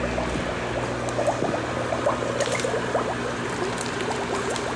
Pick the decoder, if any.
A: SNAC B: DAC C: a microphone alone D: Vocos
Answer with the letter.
C